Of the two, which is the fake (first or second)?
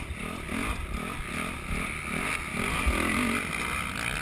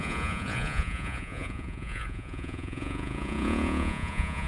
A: second